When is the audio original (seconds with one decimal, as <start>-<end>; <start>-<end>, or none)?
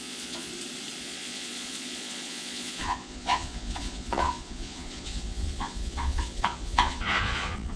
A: 0.5-1.0